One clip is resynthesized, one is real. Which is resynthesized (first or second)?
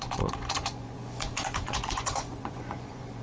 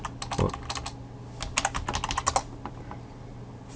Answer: first